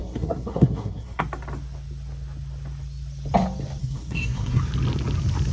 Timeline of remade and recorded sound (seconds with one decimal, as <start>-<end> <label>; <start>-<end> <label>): 0.0-1.2 remade; 1.2-3.8 recorded; 3.8-4.6 remade; 4.6-5.5 recorded